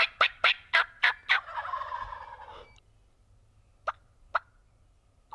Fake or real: real